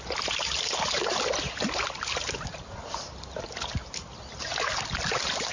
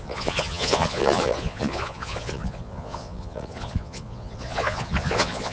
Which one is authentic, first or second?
first